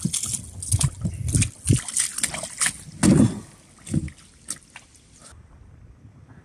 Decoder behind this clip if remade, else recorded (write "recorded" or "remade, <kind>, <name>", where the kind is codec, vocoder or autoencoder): recorded